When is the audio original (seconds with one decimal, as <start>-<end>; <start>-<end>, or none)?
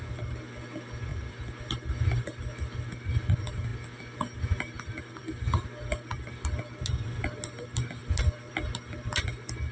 0.0-9.7